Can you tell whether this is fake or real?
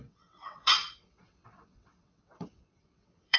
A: fake